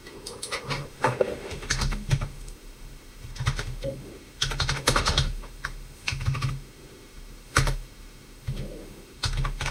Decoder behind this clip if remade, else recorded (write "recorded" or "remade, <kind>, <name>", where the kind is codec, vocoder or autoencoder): remade, autoencoder, DAC-VAE